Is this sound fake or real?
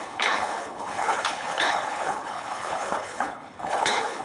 fake